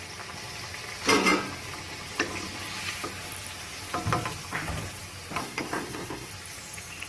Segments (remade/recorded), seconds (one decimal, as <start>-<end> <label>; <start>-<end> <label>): 0.0-5.4 recorded; 5.4-6.3 remade; 6.3-7.1 recorded